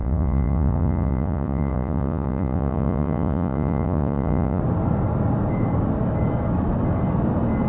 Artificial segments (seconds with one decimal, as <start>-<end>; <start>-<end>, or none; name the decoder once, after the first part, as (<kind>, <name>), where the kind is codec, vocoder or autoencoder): 0.0-4.6 (vocoder, Vocos)